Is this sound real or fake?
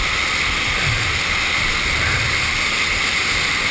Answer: real